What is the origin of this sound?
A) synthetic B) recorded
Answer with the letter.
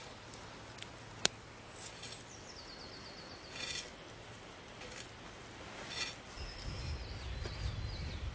B